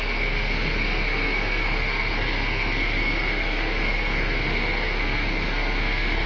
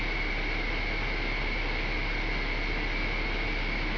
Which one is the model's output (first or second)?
first